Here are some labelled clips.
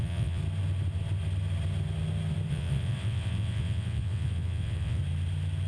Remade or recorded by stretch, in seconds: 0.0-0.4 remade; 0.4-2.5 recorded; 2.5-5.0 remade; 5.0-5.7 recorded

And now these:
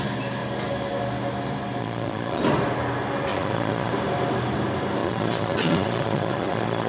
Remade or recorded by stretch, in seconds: 0.0-1.8 recorded; 1.8-2.4 remade; 2.4-3.3 recorded; 3.3-3.9 remade; 3.9-5.0 recorded; 5.0-6.9 remade

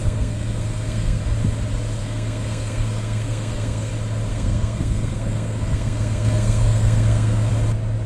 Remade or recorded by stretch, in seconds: 0.0-1.2 remade; 1.2-2.0 recorded; 2.0-3.9 remade; 3.9-4.3 recorded; 4.3-7.5 remade; 7.5-8.1 recorded